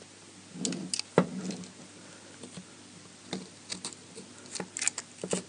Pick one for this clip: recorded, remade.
recorded